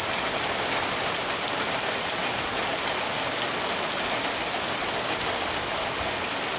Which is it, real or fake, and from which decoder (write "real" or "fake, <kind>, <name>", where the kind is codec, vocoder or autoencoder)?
real